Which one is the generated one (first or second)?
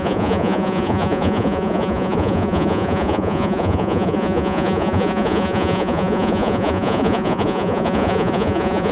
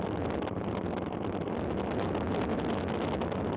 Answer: first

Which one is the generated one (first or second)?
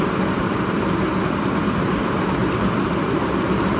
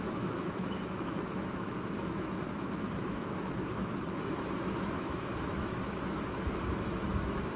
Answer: second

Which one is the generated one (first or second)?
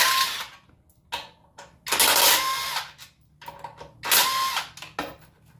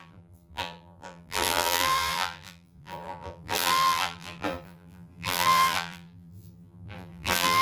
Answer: second